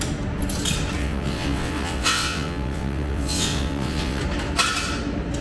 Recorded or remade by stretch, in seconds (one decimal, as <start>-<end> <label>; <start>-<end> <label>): 0.0-1.0 recorded; 1.0-4.2 remade; 4.2-5.4 recorded